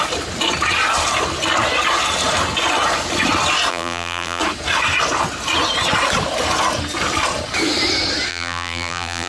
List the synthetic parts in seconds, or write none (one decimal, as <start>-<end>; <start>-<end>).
3.7-4.4; 8.3-9.3